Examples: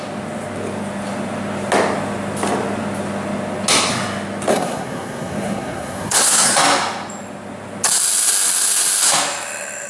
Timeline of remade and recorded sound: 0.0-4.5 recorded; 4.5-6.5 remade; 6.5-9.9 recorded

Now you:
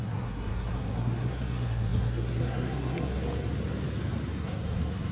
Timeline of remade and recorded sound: 0.0-3.2 remade; 3.2-4.3 recorded; 4.3-5.1 remade

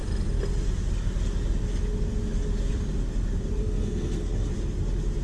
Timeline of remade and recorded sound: 0.0-3.6 recorded; 3.6-4.5 remade; 4.5-5.2 recorded

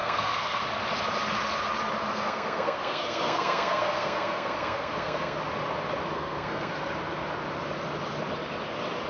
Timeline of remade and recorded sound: 0.0-0.6 remade; 0.6-2.1 recorded; 2.1-5.4 remade; 5.4-6.1 recorded; 6.1-6.7 remade; 6.7-9.1 recorded

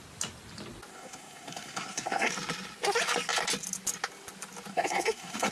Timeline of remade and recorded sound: 0.0-0.9 recorded; 0.9-2.3 remade; 2.3-4.7 recorded; 4.7-5.5 remade